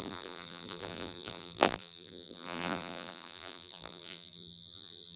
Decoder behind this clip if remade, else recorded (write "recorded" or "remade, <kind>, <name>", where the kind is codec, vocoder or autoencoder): remade, vocoder, BigVGAN v2